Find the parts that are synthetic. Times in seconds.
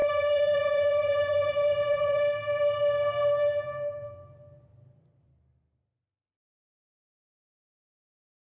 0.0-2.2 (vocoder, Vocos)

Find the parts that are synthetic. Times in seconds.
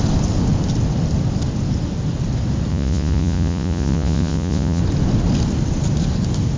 2.7-4.8 (vocoder, Vocos)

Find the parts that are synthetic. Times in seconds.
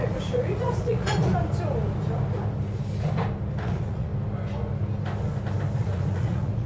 0.0-1.3 (vocoder, Vocos); 3.6-4.1; 5.8-6.7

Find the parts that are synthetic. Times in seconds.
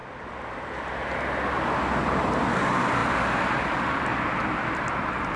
none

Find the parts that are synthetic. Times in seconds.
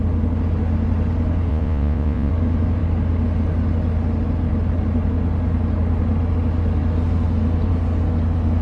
1.5-2.3 (vocoder, Vocos)